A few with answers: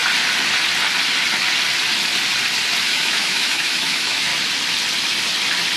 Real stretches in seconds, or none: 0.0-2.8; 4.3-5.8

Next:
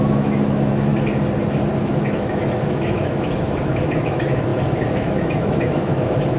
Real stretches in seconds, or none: 0.9-1.8

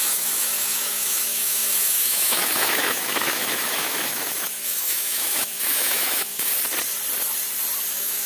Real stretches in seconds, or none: 6.5-7.9

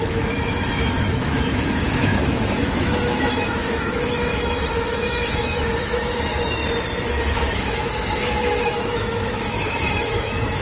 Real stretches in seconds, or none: 6.6-7.3

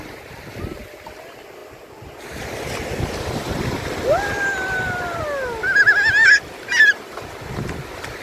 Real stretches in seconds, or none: 0.0-8.2

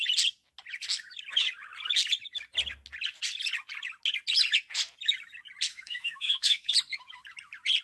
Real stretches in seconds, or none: 0.0-5.7; 6.7-7.8